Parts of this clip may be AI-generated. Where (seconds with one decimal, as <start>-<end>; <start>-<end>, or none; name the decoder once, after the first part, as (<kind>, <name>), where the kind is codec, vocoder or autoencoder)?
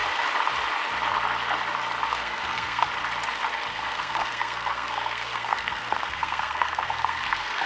2.1-2.9 (codec, SNAC); 3.7-7.7